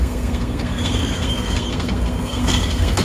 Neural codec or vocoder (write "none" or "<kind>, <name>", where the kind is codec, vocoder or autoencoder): codec, SNAC